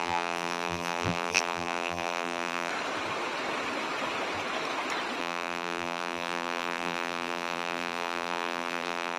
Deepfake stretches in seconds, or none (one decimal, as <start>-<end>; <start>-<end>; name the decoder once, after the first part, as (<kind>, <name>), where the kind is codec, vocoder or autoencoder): 0.0-2.7 (vocoder, BigVGAN v2); 5.2-9.2